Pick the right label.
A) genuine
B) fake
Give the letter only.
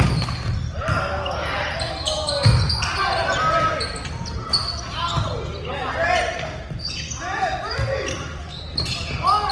A